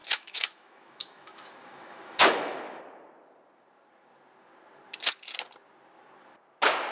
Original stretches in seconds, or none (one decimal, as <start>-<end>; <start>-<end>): 2.8-6.9